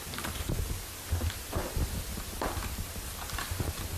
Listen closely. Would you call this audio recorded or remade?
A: recorded